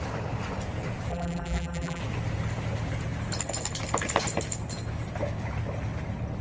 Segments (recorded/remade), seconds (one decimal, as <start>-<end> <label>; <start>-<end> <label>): 0.0-1.1 recorded; 1.1-2.0 remade; 2.0-6.4 recorded